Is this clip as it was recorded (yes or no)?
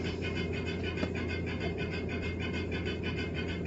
yes